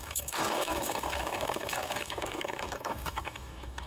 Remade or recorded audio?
remade